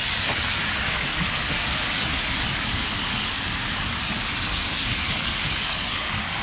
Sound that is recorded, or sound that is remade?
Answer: remade